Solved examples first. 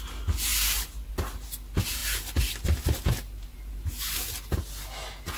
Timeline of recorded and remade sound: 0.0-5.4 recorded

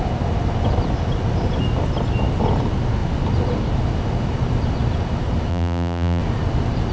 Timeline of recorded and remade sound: 0.0-5.5 recorded; 5.5-6.2 remade; 6.2-6.9 recorded

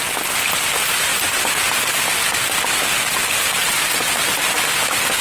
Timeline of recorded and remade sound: 0.0-5.2 recorded